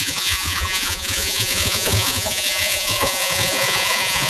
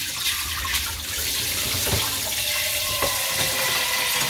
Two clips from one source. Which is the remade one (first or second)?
first